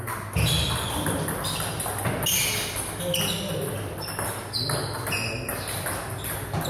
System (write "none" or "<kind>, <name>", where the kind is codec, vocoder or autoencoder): none